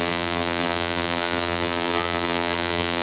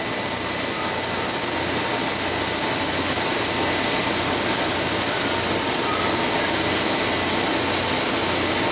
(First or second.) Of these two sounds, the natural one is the second